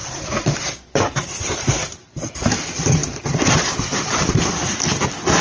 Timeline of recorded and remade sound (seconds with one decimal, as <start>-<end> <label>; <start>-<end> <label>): 0.0-2.3 remade; 2.3-3.0 recorded; 3.0-4.7 remade; 4.7-5.4 recorded